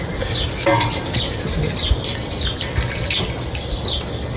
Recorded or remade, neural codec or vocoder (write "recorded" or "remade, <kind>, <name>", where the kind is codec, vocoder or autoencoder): recorded